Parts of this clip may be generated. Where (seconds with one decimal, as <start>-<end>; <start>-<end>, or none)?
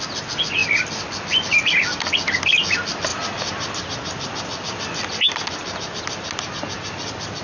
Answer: 3.1-5.2